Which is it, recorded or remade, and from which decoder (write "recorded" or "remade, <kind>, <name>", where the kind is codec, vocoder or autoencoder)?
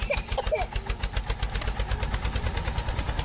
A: recorded